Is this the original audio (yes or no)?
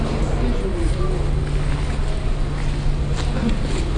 yes